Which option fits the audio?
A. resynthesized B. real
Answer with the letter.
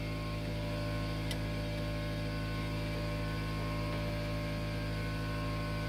B